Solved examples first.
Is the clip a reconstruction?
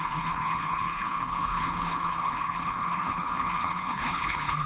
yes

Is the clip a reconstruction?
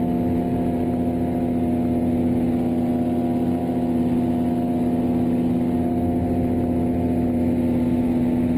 no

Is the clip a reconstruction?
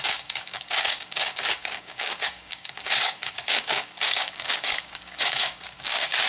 yes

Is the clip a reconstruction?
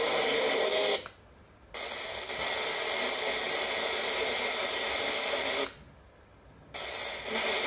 no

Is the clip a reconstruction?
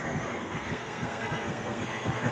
yes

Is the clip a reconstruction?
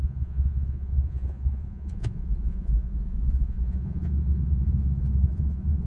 yes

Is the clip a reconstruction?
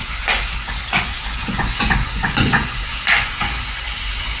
yes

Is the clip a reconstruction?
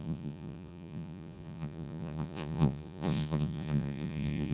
yes